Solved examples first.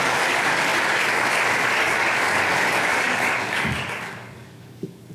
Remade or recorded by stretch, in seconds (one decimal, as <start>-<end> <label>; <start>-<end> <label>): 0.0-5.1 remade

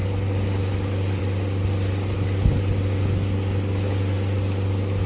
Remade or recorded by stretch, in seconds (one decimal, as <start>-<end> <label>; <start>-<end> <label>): 0.0-5.1 recorded

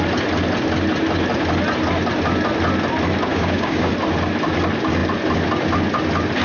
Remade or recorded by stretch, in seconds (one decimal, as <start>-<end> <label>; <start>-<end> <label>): 0.0-3.3 recorded; 3.3-3.9 remade; 3.9-6.4 recorded

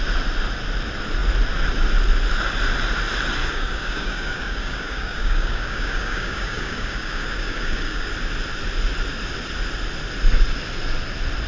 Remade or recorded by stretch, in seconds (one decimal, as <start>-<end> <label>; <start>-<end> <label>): 0.0-3.4 recorded; 3.4-8.1 remade; 8.1-11.5 recorded

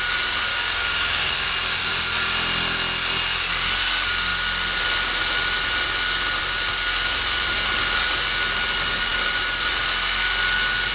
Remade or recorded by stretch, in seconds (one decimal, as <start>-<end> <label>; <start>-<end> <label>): 0.0-0.5 recorded; 0.5-1.3 remade; 1.3-10.9 recorded

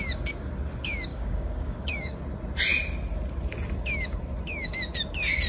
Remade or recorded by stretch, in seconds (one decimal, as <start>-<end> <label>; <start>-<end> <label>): 0.0-1.1 recorded; 1.1-2.2 remade; 2.2-5.5 recorded

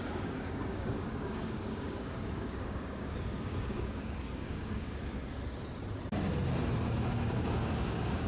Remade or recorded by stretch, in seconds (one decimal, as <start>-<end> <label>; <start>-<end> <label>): 0.0-5.2 remade; 5.2-7.1 recorded; 7.1-8.3 remade

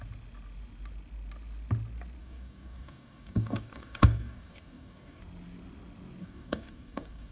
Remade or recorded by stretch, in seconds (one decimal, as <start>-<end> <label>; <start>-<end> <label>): 0.0-2.2 recorded; 2.2-5.2 remade; 5.2-6.2 recorded; 6.2-7.3 remade